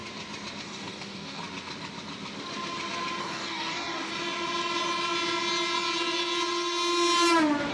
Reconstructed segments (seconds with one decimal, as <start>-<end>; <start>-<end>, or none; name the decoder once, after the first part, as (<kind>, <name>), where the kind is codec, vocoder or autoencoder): 0.6-1.4 (codec, DAC); 3.2-4.1

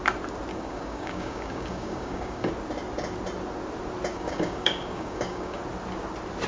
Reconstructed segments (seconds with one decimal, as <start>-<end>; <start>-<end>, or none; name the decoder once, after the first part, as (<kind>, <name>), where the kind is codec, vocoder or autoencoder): 0.5-2.5 (codec, DAC); 4.1-5.6

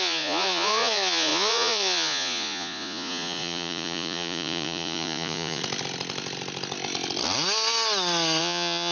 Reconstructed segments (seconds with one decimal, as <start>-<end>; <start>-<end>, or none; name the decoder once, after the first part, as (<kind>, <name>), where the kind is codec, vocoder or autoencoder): 0.0-5.6 (vocoder, Vocos); 8.4-8.9